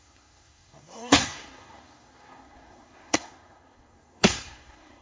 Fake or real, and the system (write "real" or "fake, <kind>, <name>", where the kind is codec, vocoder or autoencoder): fake, codec, SNAC